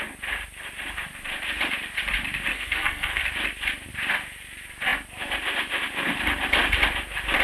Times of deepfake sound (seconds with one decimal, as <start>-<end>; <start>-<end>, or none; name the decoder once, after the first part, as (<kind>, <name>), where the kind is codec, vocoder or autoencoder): 2.5-3.2 (codec, SNAC)